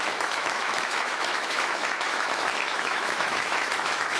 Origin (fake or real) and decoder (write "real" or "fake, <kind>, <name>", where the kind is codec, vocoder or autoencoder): fake, autoencoder, DAC-VAE